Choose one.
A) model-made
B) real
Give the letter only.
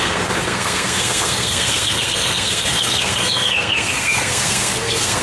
A